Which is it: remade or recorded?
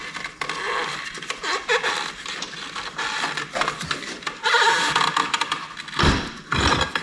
remade